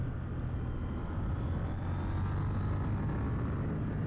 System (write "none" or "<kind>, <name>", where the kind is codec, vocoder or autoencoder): none